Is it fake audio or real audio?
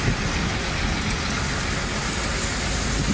real